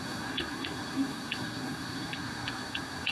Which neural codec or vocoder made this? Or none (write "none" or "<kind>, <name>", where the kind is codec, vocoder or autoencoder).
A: codec, SNAC